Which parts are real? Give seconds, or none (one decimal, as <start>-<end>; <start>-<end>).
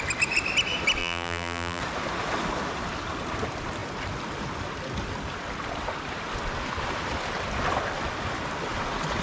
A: 0.0-1.0; 1.8-9.2